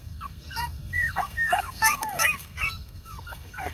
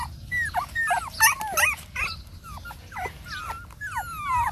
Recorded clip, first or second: second